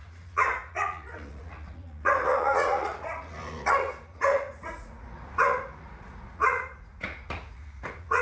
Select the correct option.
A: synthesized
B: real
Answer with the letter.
A